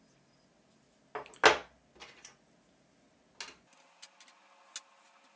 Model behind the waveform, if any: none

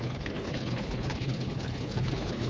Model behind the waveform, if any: codec, HILCodec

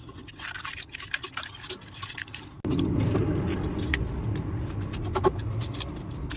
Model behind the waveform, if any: none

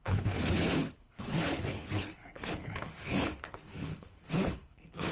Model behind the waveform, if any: codec, HILCodec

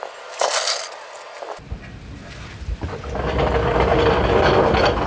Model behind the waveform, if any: none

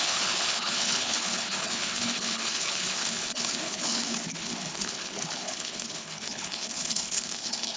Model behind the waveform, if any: codec, HILCodec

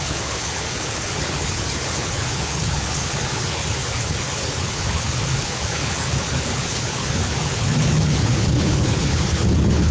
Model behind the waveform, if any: codec, HILCodec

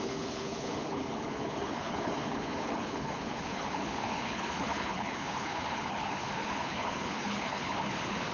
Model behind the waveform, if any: codec, HILCodec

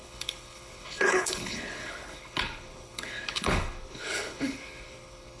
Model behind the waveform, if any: codec, HILCodec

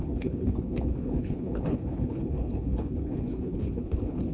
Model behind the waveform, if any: codec, HILCodec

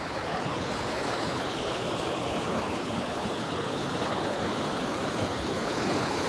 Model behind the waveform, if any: codec, HILCodec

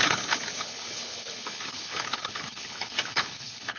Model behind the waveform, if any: codec, HILCodec